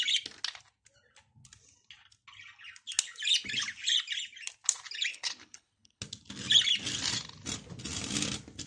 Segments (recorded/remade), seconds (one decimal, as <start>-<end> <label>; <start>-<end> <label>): 0.0-5.1 recorded; 5.1-6.0 remade; 6.0-8.7 recorded